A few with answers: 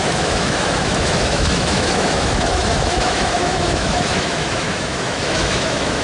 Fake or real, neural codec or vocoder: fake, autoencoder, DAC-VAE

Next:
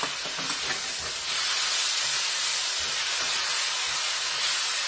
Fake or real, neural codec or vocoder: real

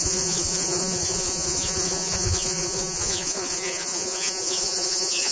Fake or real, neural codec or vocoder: fake, vocoder, Vocos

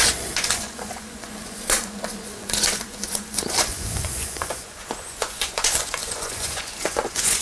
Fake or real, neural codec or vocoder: fake, vocoder, Vocos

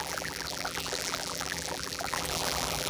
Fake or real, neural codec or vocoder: fake, vocoder, BigVGAN v2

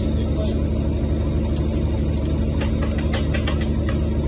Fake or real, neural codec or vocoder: real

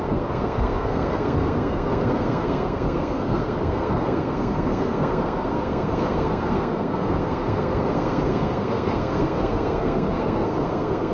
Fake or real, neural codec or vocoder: fake, codec, SNAC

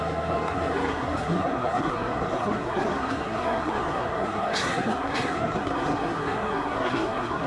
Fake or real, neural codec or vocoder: fake, codec, SNAC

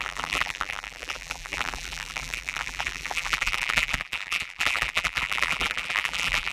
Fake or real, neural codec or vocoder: fake, vocoder, BigVGAN v2